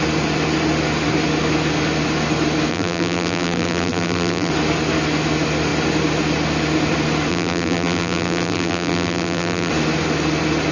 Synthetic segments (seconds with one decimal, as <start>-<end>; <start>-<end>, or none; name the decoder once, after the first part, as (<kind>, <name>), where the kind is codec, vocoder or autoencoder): 2.7-4.5 (vocoder, BigVGAN v2); 7.3-9.7